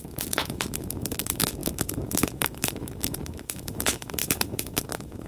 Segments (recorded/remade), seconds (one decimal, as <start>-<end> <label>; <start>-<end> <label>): 0.0-5.3 remade